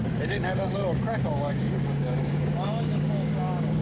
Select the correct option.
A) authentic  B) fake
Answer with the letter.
B